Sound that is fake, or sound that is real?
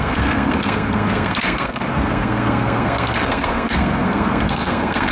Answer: fake